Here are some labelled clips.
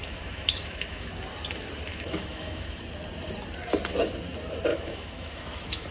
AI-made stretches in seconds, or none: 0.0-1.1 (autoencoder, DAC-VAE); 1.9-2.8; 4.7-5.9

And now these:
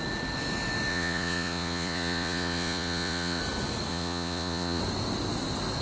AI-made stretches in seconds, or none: 0.9-3.4 (vocoder, Vocos); 3.9-4.8